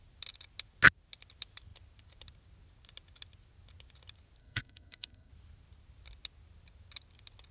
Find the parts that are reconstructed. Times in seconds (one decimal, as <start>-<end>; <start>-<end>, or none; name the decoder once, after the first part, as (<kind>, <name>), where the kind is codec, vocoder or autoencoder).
4.4-5.3 (codec, SNAC)